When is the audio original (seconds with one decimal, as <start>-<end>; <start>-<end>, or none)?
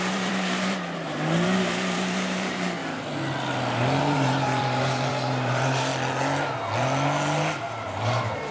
2.8-4.0; 5.9-7.6